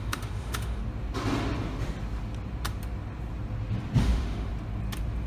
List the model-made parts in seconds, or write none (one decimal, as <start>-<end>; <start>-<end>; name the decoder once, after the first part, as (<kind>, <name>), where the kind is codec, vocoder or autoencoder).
0.0-0.8 (autoencoder, DAC-VAE); 4.0-4.5